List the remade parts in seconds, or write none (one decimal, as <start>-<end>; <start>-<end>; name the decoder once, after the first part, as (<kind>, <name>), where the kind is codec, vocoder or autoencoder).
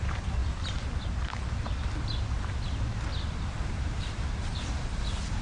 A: 0.0-0.4 (vocoder, BigVGAN v2); 3.6-5.4